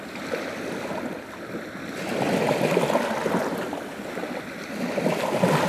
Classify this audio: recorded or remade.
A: recorded